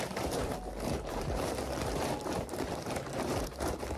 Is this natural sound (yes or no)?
no